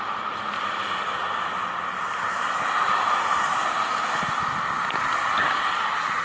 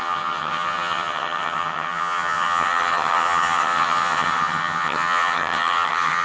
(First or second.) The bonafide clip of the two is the first